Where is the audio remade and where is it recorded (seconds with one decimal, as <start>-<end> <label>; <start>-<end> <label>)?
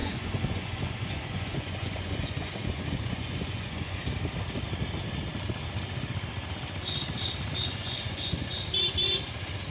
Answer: 0.0-4.0 remade; 4.0-7.6 recorded; 7.6-8.5 remade; 8.5-9.7 recorded